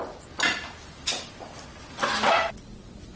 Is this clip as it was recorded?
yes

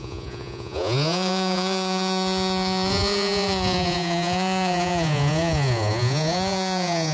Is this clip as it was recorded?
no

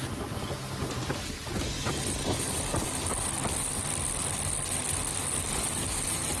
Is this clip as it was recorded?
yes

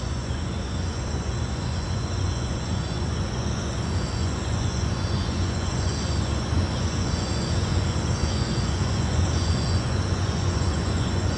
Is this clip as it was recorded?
no